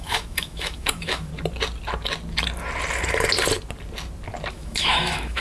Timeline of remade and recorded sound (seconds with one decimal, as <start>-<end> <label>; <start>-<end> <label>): 0.0-1.3 remade; 1.3-4.5 recorded; 4.5-5.4 remade